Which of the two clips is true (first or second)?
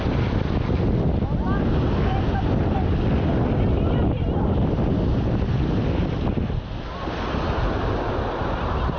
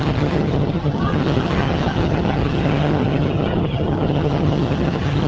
first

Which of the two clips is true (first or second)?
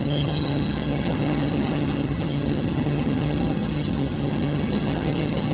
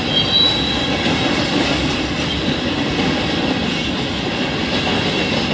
second